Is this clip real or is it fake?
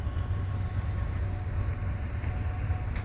real